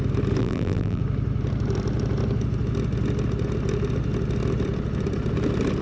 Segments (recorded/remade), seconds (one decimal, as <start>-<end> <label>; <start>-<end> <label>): 0.0-0.4 recorded; 0.4-1.0 remade; 1.0-5.8 recorded